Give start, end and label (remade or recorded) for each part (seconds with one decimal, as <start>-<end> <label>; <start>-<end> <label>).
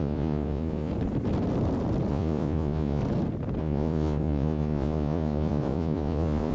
0.0-0.9 remade; 0.9-2.1 recorded; 2.1-3.0 remade; 3.0-3.6 recorded; 3.6-6.5 remade